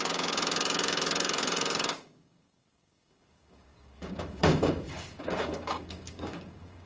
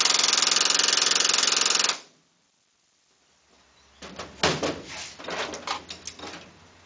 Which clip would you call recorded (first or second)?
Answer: second